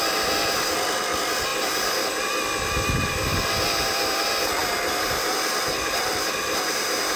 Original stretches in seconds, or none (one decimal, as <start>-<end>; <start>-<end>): 0.0-1.5; 2.2-4.6; 6.1-7.2